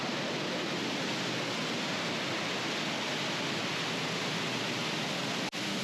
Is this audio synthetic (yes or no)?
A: no